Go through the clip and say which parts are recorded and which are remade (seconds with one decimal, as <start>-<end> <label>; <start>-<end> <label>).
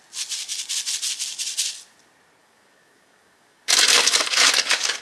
0.0-2.4 recorded; 2.4-5.0 remade